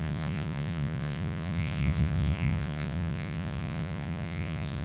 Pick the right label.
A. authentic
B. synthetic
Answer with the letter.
B